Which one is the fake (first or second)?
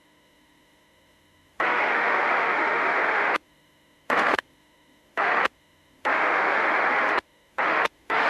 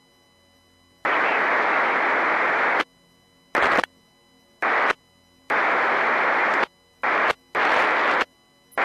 first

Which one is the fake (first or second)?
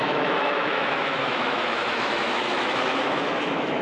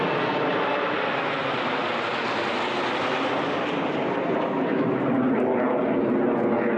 first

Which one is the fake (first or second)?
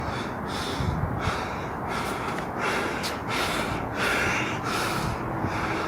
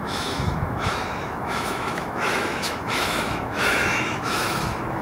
second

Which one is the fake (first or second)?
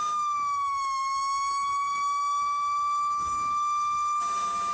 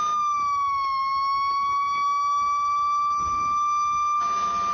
first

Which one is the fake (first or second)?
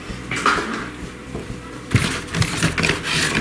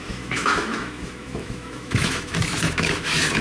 second